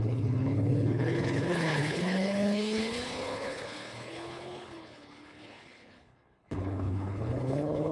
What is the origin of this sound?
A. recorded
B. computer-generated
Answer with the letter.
B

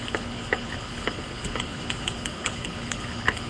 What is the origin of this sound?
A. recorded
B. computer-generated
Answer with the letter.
B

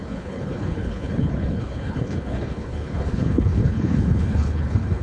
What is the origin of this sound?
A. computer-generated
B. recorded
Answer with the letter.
A